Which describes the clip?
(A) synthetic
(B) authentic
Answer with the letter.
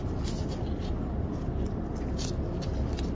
B